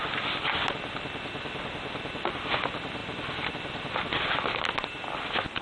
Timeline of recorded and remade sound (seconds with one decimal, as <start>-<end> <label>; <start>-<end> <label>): 0.0-5.6 recorded